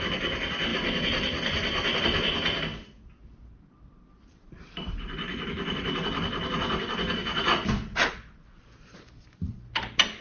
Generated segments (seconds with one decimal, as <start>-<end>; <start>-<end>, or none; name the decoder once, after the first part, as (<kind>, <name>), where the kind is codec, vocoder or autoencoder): 0.7-2.0 (vocoder, BigVGAN v2); 2.7-3.2